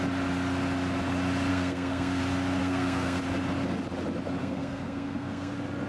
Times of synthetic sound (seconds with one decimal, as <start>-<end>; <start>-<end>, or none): 1.5-2.2; 2.6-3.2; 4.4-5.5